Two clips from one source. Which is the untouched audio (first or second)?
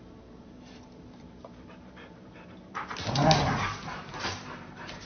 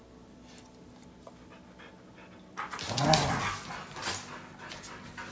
second